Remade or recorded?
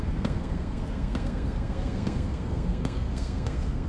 remade